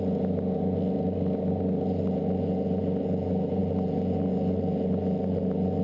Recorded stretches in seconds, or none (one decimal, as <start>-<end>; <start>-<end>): 0.0-5.8